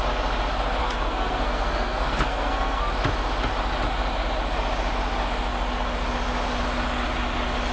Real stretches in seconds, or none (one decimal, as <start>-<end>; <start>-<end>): 0.0-0.8; 2.9-7.7